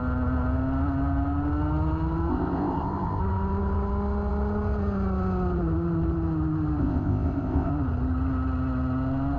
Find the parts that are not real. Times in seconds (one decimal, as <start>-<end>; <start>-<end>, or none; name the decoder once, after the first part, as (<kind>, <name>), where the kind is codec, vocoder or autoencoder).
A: 2.3-3.2 (codec, ZipCodec); 6.8-7.7